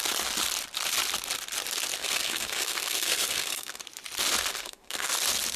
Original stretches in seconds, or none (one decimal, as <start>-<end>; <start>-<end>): 0.0-2.0; 3.8-4.5; 5.1-5.6